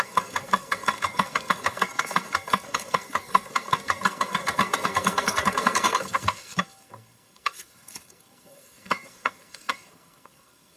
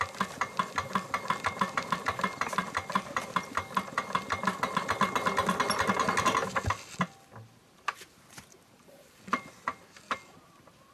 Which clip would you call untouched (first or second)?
second